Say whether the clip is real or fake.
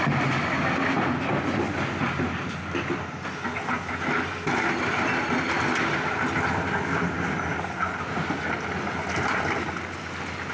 real